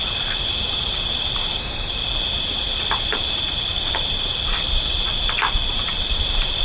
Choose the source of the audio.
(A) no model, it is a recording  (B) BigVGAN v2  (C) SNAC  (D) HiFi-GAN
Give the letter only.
B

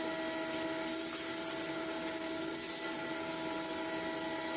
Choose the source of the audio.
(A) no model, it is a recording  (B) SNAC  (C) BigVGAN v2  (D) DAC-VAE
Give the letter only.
A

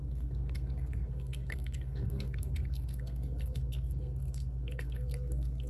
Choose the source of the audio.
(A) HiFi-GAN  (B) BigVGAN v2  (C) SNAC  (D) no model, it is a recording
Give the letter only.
C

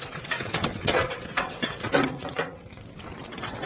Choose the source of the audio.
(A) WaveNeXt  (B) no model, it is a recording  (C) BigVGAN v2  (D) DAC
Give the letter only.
A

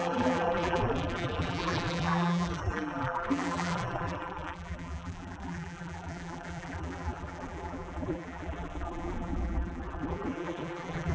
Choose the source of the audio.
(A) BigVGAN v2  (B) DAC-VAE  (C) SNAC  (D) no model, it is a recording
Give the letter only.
A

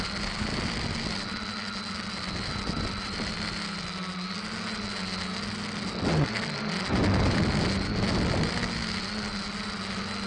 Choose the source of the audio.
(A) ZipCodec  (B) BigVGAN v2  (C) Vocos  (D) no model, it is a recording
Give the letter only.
D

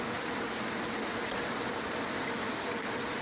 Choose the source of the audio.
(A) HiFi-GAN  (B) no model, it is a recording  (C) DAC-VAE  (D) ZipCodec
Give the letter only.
B